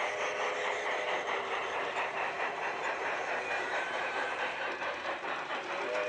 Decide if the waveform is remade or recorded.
remade